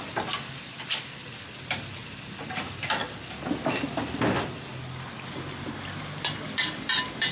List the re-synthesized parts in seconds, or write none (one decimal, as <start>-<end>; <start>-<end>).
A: none